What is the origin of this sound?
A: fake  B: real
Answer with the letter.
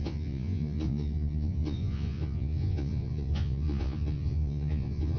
A